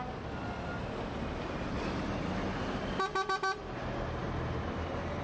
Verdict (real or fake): real